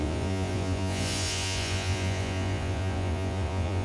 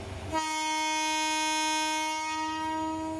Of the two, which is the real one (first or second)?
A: second